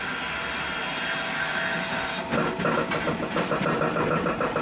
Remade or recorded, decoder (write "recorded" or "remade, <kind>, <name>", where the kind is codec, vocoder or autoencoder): recorded